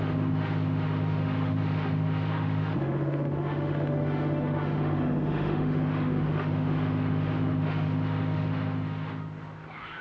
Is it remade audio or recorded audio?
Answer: remade